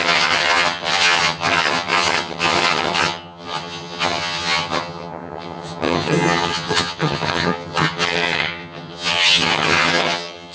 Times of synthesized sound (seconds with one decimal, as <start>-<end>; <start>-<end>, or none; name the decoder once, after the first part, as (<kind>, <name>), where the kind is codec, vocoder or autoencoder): 0.0-10.5 (vocoder, HiFi-GAN)